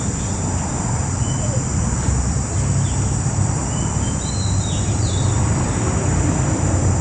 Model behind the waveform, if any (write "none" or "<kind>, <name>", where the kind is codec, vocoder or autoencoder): vocoder, BigVGAN v2